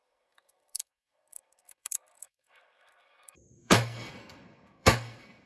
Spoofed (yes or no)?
yes